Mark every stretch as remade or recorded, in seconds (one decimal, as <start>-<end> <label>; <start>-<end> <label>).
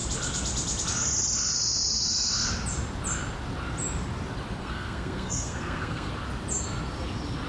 0.0-4.6 recorded; 4.6-6.1 remade; 6.1-7.5 recorded